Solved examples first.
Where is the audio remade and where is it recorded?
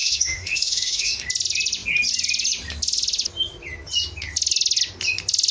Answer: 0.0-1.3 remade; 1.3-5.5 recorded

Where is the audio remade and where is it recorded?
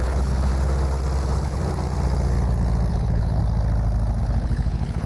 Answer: 0.0-0.5 remade; 0.5-1.2 recorded; 1.2-1.6 remade; 1.6-2.9 recorded; 2.9-3.4 remade; 3.4-4.2 recorded; 4.2-5.1 remade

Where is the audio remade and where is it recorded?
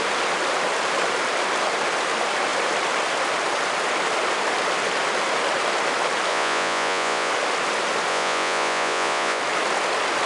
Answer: 0.0-6.3 recorded; 6.3-7.3 remade; 7.3-8.1 recorded; 8.1-9.4 remade; 9.4-10.3 recorded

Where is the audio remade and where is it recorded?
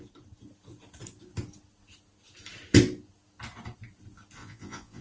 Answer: 0.0-4.4 recorded; 4.4-5.0 remade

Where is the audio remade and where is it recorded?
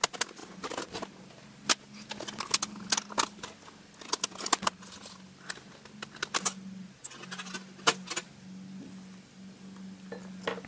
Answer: 0.0-0.4 recorded; 0.4-1.2 remade; 1.2-10.7 recorded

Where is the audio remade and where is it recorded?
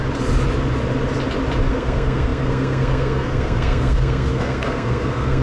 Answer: 0.0-1.7 recorded; 1.7-5.4 remade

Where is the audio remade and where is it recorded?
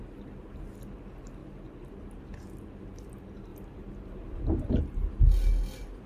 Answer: 0.0-3.5 recorded; 3.5-4.8 remade; 4.8-6.1 recorded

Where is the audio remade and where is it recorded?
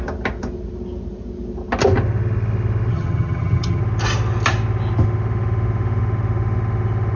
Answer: 0.0-2.9 recorded; 2.9-3.8 remade; 3.8-7.2 recorded